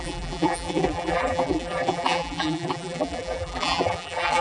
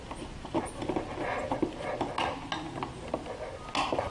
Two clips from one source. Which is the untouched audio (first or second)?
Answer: second